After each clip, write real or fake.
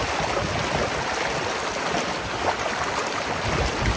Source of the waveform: real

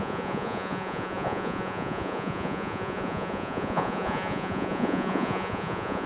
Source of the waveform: fake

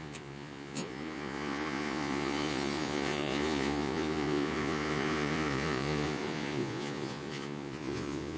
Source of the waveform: fake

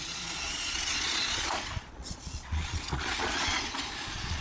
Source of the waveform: fake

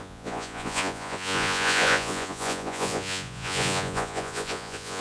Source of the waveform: fake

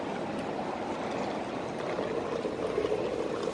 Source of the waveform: real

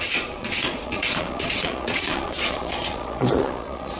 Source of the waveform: fake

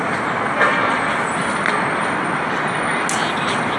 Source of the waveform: real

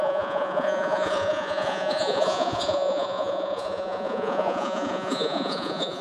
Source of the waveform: fake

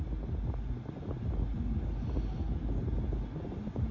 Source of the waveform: real